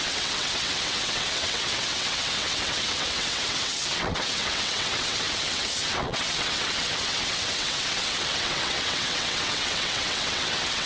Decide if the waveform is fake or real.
fake